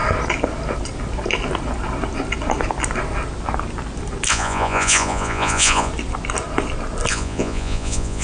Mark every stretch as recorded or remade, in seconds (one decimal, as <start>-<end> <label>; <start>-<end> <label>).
0.0-4.3 recorded; 4.3-5.9 remade; 5.9-7.1 recorded; 7.1-8.2 remade